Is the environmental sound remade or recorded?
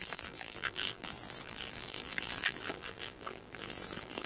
remade